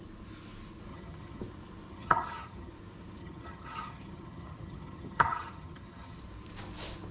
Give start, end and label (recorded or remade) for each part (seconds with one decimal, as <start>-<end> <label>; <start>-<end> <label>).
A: 0.0-0.9 recorded; 0.9-1.4 remade; 1.4-1.9 recorded; 1.9-2.7 remade; 2.7-3.2 recorded; 3.2-6.2 remade; 6.2-7.1 recorded